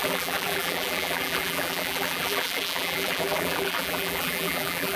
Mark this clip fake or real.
fake